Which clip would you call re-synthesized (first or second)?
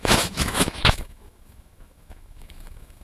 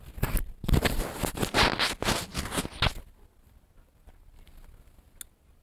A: first